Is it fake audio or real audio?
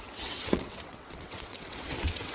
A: fake